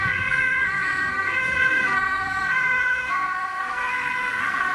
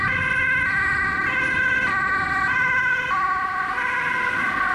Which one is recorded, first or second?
second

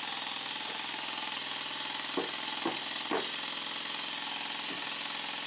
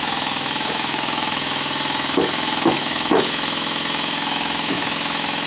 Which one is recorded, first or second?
first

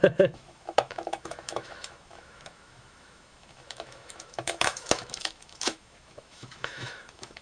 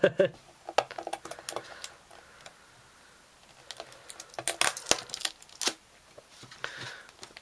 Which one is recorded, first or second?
second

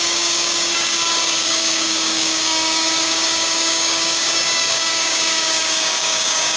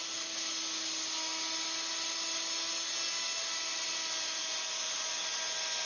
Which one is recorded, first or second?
second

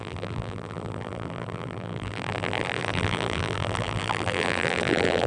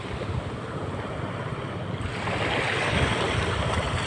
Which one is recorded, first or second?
second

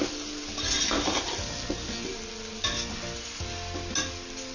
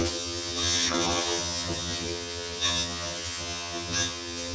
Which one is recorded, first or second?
first